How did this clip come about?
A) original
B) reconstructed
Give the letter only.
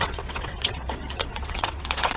B